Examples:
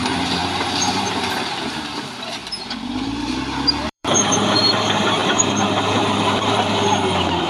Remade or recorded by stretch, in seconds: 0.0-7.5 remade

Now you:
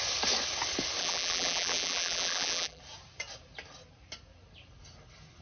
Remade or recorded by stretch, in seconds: 0.0-1.0 recorded; 1.0-2.8 remade; 2.8-5.4 recorded

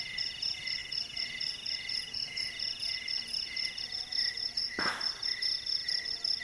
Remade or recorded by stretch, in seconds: 0.0-5.8 recorded; 5.8-6.4 remade

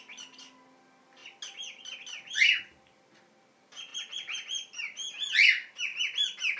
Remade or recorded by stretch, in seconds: 0.0-6.6 recorded

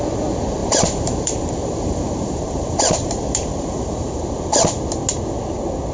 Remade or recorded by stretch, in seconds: 0.0-0.6 recorded; 0.6-4.1 remade; 4.1-5.9 recorded